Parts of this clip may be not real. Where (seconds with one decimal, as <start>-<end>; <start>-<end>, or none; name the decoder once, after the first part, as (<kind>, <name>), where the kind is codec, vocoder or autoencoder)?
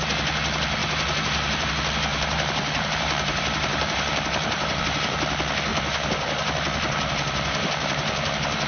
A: 0.8-1.7 (vocoder, BigVGAN v2); 2.1-4.8; 5.7-8.7